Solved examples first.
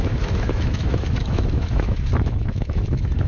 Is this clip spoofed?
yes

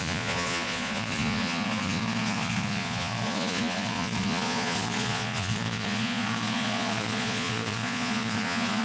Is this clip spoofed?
yes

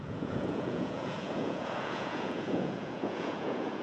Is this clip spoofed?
yes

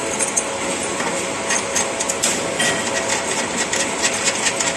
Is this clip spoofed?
no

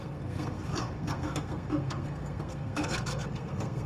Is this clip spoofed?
yes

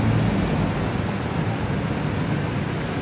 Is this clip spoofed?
no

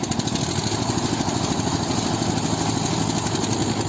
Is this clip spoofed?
no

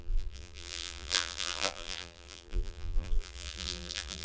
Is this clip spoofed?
yes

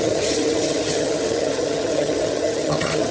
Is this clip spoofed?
yes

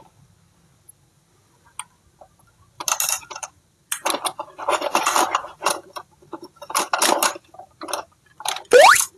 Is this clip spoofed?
no